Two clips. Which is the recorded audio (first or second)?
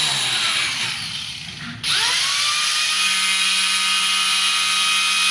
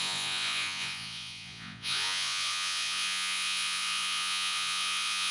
first